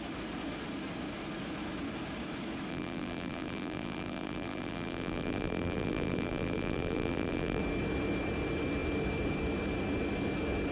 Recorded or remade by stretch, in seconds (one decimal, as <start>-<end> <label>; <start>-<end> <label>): 0.0-2.7 recorded; 2.7-7.6 remade; 7.6-10.7 recorded